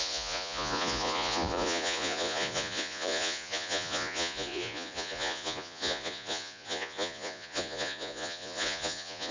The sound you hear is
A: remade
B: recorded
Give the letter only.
A